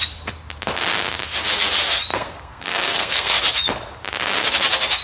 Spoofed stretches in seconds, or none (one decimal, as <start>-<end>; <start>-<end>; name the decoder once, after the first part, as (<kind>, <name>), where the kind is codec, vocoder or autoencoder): 2.1-3.4 (codec, SNAC)